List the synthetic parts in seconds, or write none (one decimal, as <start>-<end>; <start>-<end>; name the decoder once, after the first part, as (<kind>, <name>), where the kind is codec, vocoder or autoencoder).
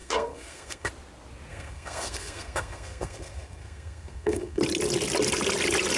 0.0-0.9 (codec, SNAC); 1.5-4.6